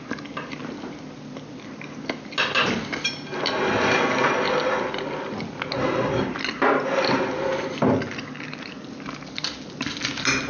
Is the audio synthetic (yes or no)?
no